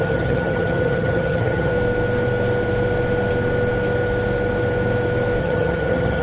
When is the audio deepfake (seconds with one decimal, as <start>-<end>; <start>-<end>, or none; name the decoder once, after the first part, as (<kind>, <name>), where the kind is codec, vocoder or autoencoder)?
0.0-1.7 (vocoder, HiFi-GAN); 5.4-6.2